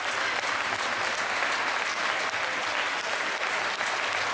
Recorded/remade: recorded